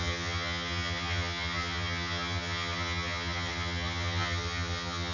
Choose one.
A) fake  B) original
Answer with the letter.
A